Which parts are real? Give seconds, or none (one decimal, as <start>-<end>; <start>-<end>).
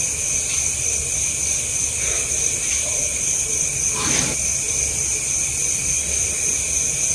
0.0-7.1